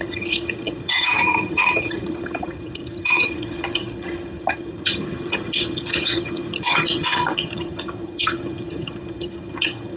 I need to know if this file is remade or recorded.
remade